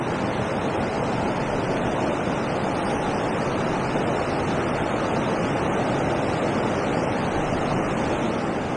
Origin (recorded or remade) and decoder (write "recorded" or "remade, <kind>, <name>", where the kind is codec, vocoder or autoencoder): recorded